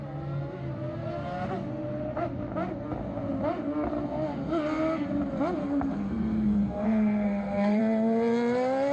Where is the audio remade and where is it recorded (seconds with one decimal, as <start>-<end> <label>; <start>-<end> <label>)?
0.0-5.6 recorded; 5.6-7.8 remade; 7.8-8.9 recorded